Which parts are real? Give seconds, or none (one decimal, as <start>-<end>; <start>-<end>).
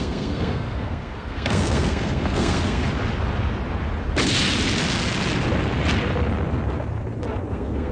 2.8-7.5